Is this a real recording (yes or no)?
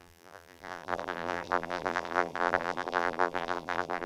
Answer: no